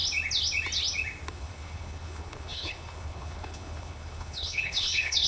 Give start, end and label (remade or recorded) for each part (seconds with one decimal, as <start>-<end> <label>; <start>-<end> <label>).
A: 0.0-1.3 recorded; 1.3-5.3 remade